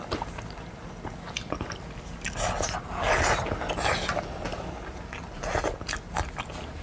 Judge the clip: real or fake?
real